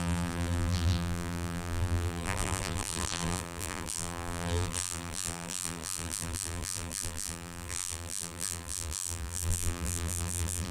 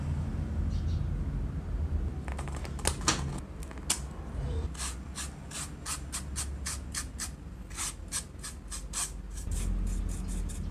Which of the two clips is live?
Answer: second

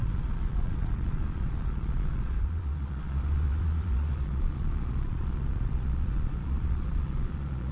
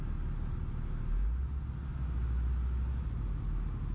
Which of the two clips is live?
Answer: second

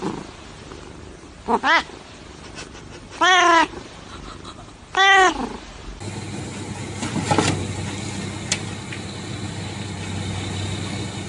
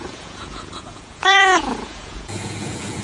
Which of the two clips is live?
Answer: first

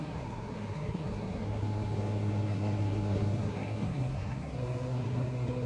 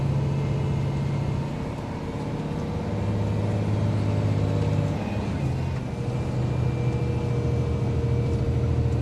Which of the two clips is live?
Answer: second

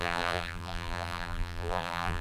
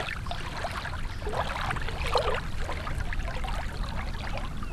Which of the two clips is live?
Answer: second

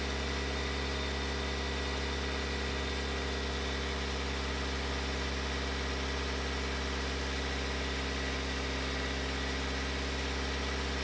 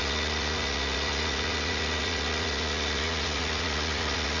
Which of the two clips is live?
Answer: first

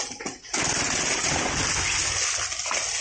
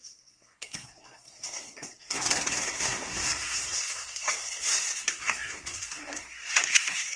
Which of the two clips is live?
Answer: first